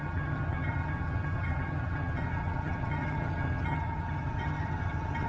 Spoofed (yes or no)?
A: yes